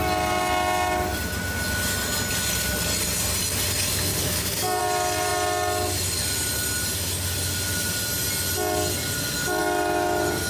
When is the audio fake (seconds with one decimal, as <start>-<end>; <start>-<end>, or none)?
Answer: 4.1-4.8